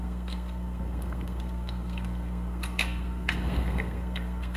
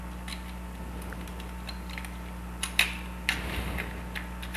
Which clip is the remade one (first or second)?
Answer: first